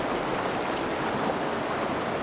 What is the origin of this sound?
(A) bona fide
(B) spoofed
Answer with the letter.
A